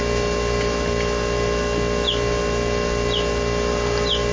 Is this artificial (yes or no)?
no